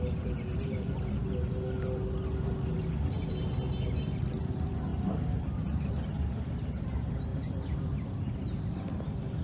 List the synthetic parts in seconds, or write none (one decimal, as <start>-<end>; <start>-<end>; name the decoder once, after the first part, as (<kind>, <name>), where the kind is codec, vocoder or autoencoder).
4.9-5.9 (vocoder, BigVGAN v2); 7.3-8.9